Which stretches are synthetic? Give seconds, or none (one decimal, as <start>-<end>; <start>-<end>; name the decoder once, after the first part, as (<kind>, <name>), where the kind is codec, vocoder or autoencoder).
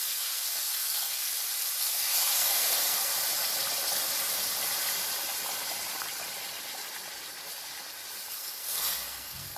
0.0-1.2 (codec, SNAC); 1.8-3.1; 8.3-9.6